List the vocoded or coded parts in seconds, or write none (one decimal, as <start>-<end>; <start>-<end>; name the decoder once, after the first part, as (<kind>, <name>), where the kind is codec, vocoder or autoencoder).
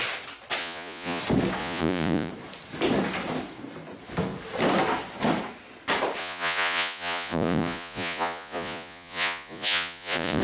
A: 0.6-1.2 (vocoder, Vocos); 1.6-2.3; 6.2-10.4